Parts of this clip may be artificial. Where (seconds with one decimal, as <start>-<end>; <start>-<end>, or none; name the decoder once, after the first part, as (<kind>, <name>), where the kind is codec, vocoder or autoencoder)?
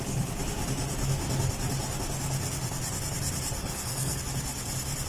3.6-4.2 (codec, SNAC)